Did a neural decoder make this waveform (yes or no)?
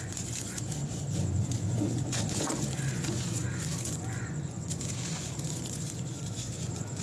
yes